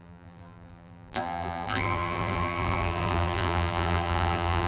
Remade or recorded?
remade